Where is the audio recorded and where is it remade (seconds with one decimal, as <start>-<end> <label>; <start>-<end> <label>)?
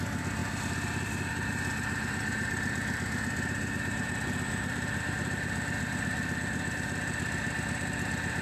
0.0-8.4 recorded